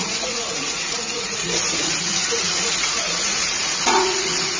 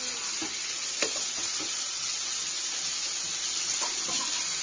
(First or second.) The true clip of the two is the second